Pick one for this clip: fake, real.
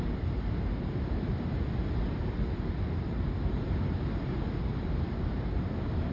fake